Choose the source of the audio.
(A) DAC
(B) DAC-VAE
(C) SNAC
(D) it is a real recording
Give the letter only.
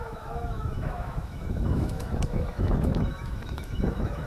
B